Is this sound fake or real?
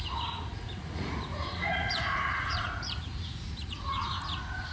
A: fake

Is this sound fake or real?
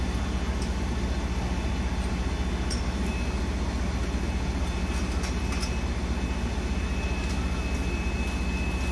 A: real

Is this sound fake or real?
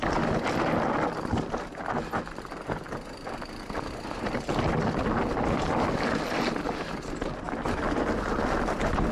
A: real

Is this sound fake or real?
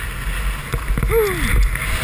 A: real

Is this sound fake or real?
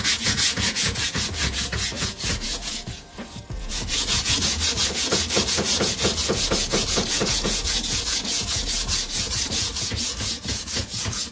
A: fake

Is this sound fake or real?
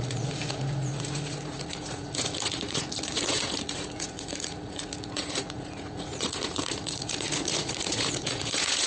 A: fake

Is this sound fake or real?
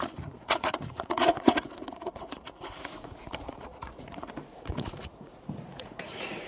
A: fake